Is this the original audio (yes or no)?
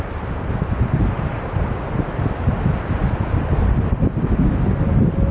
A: yes